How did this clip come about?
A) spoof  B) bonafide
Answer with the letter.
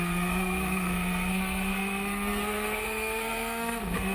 A